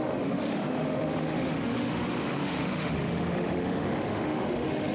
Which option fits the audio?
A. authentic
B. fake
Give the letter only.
B